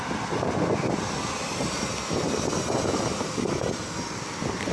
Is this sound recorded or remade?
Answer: recorded